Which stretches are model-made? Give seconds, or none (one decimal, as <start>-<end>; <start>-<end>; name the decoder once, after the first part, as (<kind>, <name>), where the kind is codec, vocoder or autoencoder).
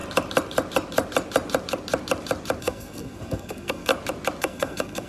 2.6-3.9 (codec, SNAC); 4.4-5.1